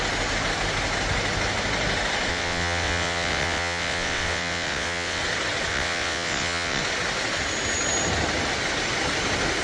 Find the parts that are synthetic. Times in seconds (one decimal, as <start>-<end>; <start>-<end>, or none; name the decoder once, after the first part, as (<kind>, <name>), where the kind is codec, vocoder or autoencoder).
2.3-5.2 (vocoder, WaveNeXt); 5.7-6.8